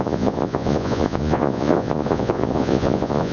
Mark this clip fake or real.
fake